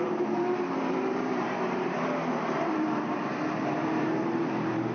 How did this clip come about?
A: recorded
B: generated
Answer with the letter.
B